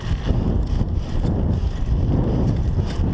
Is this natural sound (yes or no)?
yes